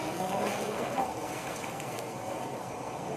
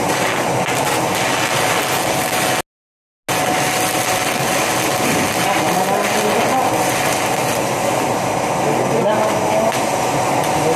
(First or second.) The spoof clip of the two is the first